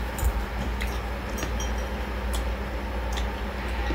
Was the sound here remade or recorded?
recorded